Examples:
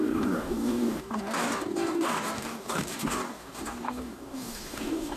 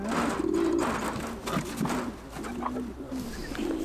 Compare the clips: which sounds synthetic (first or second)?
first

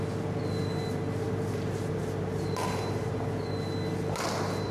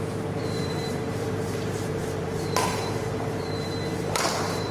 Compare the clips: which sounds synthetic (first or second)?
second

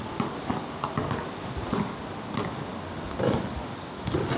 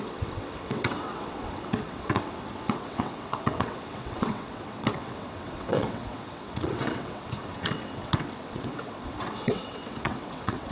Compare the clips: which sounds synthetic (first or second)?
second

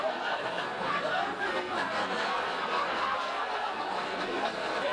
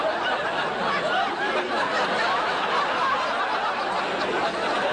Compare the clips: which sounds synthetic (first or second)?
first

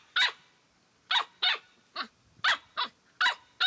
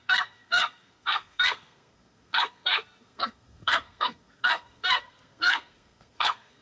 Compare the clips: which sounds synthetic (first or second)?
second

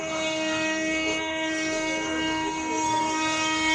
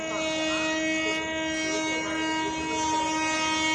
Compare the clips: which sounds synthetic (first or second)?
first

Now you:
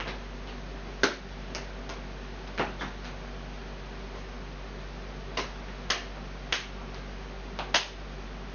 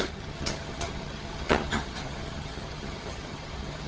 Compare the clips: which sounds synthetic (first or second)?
second